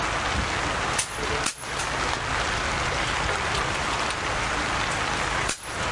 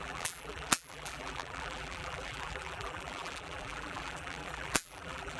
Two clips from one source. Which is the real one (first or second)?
first